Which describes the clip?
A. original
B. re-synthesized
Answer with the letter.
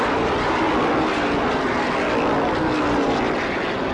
A